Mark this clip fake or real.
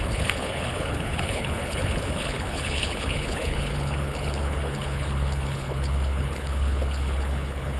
fake